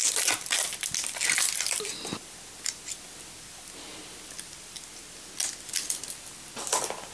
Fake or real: real